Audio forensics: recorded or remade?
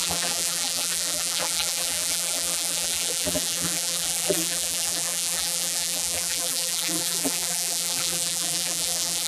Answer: remade